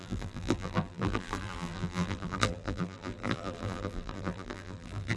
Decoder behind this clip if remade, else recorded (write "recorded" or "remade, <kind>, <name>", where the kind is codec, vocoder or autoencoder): remade, vocoder, BigVGAN v2